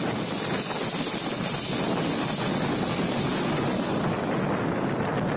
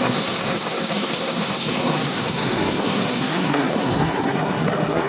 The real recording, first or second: first